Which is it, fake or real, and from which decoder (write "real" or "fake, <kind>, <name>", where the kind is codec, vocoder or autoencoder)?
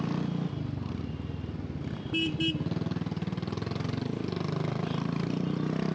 real